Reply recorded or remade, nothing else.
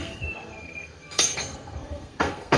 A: remade